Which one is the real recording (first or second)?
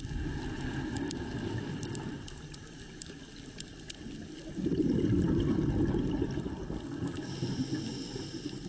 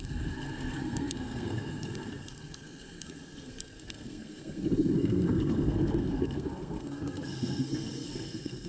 first